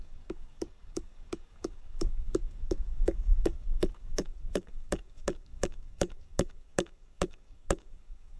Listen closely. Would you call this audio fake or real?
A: fake